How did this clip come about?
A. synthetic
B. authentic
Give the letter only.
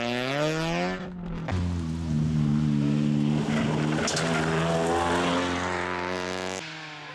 B